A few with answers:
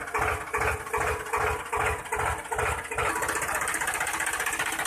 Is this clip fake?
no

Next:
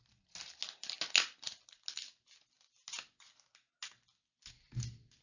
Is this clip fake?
no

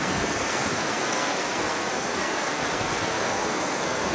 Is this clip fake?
yes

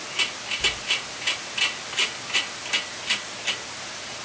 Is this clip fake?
no